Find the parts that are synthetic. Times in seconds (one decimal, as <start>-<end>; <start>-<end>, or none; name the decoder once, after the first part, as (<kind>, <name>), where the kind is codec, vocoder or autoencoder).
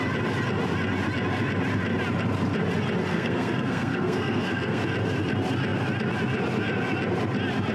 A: 3.1-4.8 (codec, SNAC)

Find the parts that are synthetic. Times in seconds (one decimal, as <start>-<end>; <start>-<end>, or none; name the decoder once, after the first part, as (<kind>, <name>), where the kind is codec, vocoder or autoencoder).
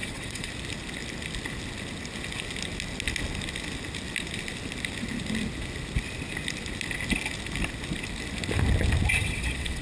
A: 0.0-0.5 (vocoder, WaveNeXt); 9.2-9.8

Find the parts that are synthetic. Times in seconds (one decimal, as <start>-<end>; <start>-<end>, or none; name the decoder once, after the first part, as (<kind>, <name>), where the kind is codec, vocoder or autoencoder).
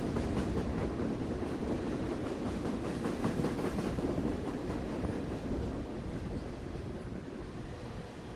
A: 0.0-4.6 (vocoder, BigVGAN v2); 6.1-8.4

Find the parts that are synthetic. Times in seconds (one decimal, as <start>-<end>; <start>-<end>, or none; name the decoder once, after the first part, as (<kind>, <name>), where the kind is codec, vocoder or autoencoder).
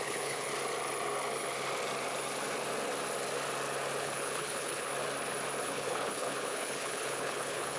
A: 0.0-0.5 (codec, HILCodec); 4.0-4.9; 5.6-7.8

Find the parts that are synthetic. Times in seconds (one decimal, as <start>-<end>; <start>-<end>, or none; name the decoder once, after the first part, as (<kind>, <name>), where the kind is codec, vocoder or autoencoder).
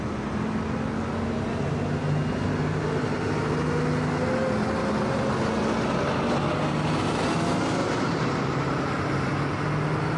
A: 4.8-5.3 (vocoder, BigVGAN v2); 7.8-9.3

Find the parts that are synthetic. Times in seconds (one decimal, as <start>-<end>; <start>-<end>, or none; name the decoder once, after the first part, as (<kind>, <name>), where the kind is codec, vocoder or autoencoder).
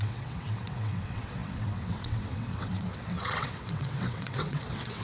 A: 0.0-5.0 (vocoder, WaveNeXt)